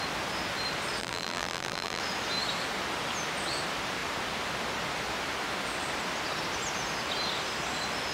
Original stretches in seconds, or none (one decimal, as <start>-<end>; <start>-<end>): 0.0-1.0; 2.0-8.1